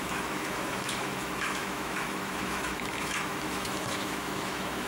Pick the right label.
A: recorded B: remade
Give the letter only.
B